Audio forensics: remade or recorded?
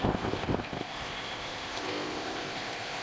remade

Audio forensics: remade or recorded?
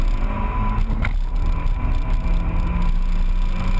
recorded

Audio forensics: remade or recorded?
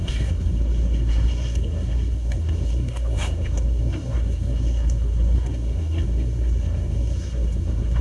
remade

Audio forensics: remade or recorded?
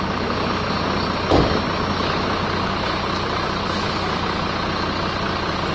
recorded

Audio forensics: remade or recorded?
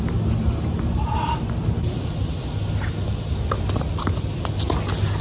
recorded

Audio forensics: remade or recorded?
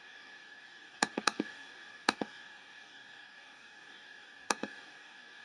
remade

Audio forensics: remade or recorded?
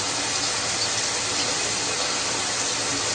recorded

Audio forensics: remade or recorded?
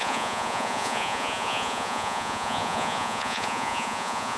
remade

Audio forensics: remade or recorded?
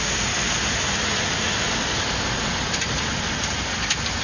recorded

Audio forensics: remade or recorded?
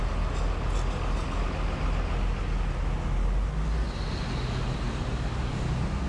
recorded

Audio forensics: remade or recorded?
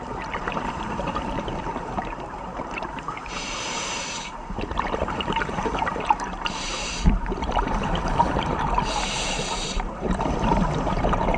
remade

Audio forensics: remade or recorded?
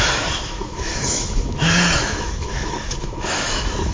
remade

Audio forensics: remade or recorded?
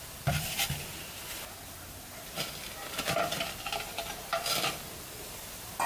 recorded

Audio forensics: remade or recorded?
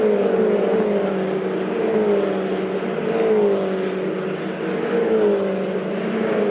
recorded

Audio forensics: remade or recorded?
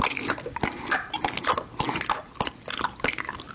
recorded